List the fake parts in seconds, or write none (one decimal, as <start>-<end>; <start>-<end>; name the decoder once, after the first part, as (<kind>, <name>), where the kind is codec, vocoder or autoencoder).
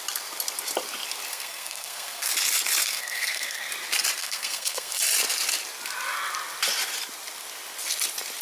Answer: 1.3-2.3 (codec, SNAC); 2.8-3.7; 4.2-5.0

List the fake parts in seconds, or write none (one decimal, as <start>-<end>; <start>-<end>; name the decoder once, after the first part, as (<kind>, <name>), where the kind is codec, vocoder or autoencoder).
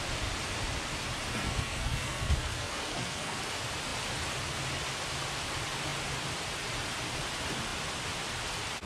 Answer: 1.3-3.4 (codec, SNAC)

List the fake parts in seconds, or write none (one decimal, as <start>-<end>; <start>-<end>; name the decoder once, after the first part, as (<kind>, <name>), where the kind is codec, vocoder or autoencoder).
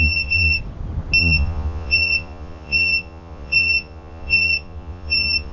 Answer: 0.0-0.6 (vocoder, Vocos); 1.2-5.5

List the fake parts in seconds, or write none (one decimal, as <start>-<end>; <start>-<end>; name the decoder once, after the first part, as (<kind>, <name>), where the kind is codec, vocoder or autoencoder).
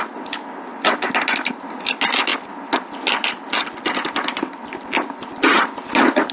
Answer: none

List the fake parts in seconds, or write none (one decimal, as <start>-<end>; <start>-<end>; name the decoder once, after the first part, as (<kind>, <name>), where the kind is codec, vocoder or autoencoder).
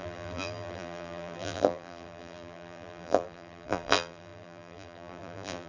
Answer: 0.0-5.7 (vocoder, BigVGAN v2)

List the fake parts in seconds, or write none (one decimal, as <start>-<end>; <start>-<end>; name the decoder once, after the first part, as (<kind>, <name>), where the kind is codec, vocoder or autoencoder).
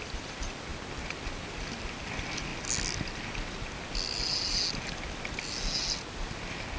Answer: none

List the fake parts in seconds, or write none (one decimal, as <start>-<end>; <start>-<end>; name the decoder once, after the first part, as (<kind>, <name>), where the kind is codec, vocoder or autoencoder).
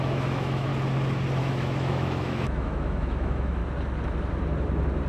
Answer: 0.0-0.7 (autoencoder, DAC-VAE); 1.4-3.6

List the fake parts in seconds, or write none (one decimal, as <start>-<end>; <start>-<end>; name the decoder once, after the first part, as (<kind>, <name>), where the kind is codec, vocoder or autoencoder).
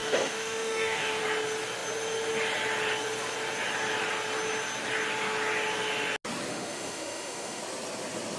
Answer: 0.0-1.2 (autoencoder, DAC-VAE); 6.5-7.6